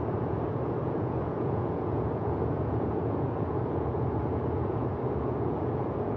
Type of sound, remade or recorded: remade